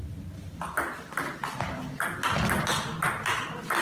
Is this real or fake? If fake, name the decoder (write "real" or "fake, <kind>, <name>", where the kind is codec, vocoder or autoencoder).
real